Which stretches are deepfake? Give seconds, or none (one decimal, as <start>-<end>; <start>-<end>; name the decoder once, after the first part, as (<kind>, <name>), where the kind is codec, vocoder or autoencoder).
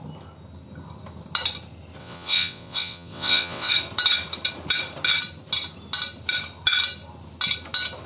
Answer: 2.0-3.7 (vocoder, WaveNeXt)